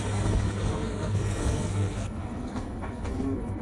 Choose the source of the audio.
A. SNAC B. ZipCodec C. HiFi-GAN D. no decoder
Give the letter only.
A